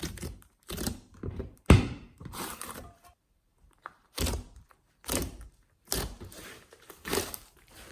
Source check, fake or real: fake